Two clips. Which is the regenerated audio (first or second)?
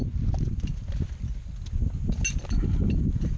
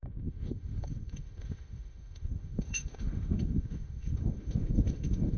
second